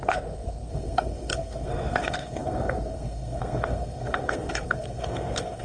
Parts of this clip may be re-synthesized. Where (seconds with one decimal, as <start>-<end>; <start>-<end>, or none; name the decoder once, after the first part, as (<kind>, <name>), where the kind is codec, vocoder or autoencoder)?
0.0-5.6 (codec, SNAC)